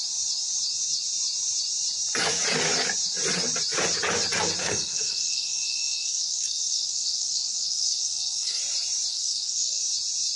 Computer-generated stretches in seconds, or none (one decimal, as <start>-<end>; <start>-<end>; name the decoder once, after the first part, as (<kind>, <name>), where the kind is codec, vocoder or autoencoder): 4.6-8.6 (codec, SNAC); 9.1-9.8